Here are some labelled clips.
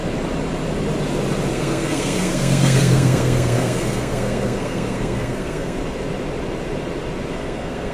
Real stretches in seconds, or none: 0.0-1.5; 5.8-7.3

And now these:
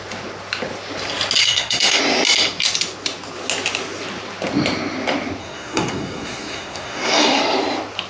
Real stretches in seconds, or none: 0.0-1.4; 2.0-5.4; 7.4-8.1

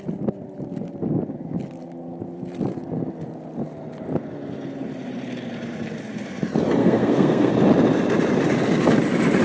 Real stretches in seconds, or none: 0.0-6.8; 7.5-9.4

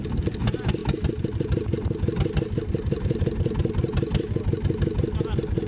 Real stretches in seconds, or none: 0.0-5.7

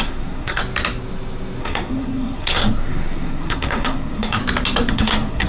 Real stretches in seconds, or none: 0.6-1.6; 4.4-4.9

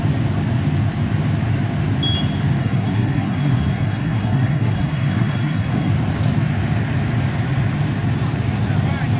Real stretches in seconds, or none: 0.0-2.6; 5.9-9.2